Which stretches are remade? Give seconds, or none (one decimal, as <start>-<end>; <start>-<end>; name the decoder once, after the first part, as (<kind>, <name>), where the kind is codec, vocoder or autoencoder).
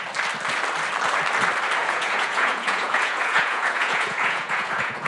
1.8-5.1 (vocoder, Vocos)